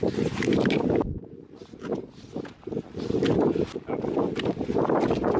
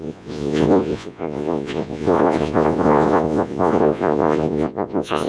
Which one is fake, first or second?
second